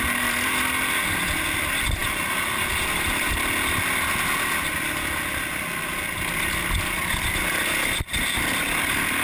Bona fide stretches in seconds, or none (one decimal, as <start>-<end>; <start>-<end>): 0.0-9.2